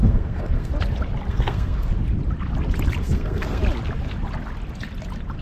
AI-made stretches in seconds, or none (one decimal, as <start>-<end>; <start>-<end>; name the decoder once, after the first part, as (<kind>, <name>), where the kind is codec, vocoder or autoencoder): 0.0-0.7 (codec, SNAC); 1.3-1.9; 3.0-3.6